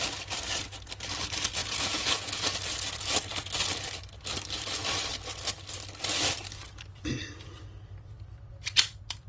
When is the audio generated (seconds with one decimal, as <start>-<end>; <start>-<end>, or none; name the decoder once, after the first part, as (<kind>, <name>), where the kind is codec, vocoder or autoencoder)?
1.6-2.4 (vocoder, Vocos)